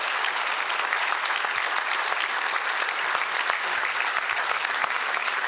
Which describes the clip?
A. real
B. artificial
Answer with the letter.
A